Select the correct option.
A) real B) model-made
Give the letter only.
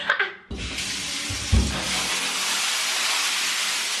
A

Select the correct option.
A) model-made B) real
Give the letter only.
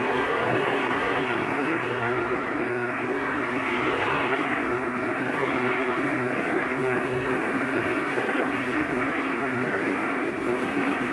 A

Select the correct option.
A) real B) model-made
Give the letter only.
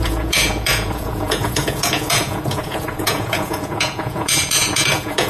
B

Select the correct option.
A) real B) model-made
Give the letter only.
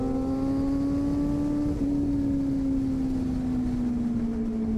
A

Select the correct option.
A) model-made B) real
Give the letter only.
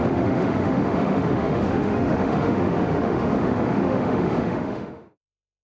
A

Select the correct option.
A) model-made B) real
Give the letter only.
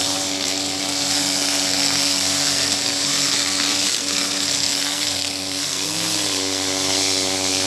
A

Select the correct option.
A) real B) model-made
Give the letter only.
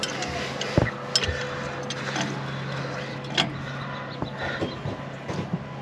A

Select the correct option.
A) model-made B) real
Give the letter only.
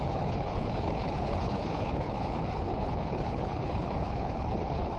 A